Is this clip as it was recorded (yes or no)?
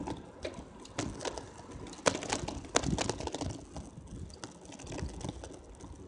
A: yes